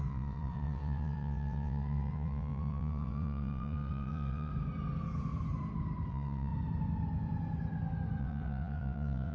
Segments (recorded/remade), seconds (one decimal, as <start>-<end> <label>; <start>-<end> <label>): 0.0-4.5 remade; 4.5-6.1 recorded; 6.1-6.5 remade; 6.5-8.2 recorded; 8.2-9.3 remade